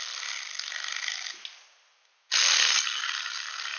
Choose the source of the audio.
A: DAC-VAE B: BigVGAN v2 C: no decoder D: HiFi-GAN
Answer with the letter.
C